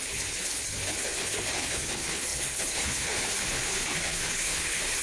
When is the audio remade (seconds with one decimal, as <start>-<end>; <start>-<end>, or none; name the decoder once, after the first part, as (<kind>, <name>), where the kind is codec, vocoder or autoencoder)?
0.0-5.0 (codec, HILCodec)